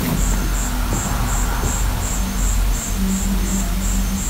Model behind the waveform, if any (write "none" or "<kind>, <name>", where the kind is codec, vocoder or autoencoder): none